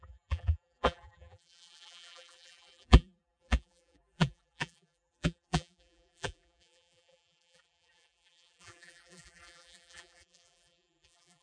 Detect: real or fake fake